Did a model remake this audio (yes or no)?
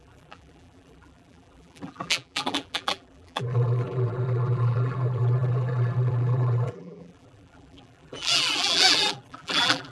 yes